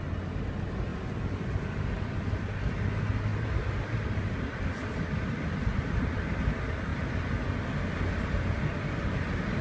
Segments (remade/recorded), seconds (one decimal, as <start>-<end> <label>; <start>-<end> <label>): 0.0-3.3 recorded; 3.3-4.3 remade; 4.3-9.6 recorded